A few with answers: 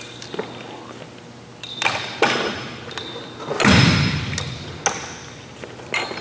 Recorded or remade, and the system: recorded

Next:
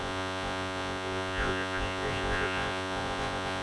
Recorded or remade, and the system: remade, vocoder, Vocos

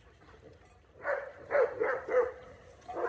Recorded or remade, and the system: recorded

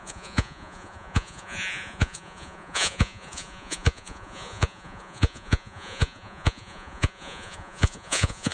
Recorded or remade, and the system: remade, vocoder, Vocos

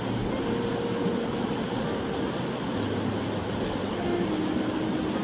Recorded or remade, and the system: recorded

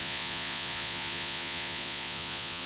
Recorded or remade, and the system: remade, vocoder, Vocos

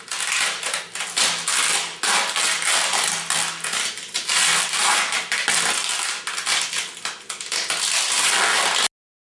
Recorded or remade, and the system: recorded